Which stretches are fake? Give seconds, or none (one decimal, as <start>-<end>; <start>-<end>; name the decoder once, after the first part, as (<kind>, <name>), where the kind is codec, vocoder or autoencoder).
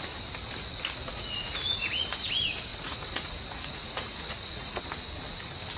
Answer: 1.0-2.3 (vocoder, Vocos); 2.7-4.8